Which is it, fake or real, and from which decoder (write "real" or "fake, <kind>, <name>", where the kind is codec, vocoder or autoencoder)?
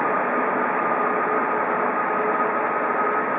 real